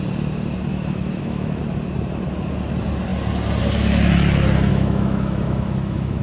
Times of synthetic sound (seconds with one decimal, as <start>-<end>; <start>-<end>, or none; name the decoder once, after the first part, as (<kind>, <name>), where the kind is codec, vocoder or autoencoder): 0.7-1.6 (autoencoder, DAC-VAE); 4.7-6.2